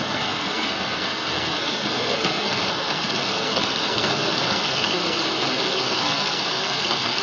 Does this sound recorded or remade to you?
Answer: remade